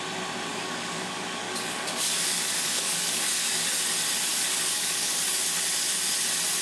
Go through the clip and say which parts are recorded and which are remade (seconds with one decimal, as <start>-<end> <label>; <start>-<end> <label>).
0.0-0.5 recorded; 0.5-3.7 remade; 3.7-4.3 recorded; 4.3-5.1 remade; 5.1-6.6 recorded

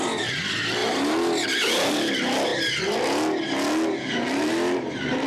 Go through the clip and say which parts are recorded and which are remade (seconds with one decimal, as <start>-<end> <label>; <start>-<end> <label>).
0.0-0.8 remade; 0.8-1.9 recorded; 1.9-2.5 remade; 2.5-4.1 recorded; 4.1-5.3 remade

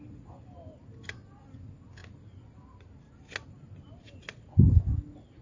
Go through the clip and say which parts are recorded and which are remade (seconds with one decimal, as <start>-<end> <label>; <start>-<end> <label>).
0.0-5.4 recorded

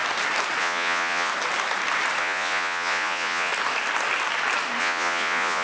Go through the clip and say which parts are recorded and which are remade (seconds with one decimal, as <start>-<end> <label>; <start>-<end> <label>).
0.0-0.6 recorded; 0.6-1.3 remade; 1.3-2.2 recorded; 2.2-3.5 remade; 3.5-4.8 recorded; 4.8-5.6 remade

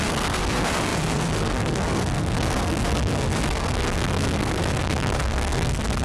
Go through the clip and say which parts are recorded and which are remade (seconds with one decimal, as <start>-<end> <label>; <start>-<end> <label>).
0.0-6.0 remade

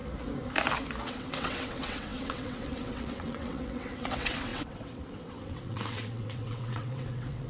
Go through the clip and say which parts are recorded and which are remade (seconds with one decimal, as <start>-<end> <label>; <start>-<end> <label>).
0.0-1.1 recorded; 1.1-7.5 remade